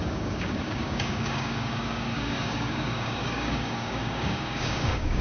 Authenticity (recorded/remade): remade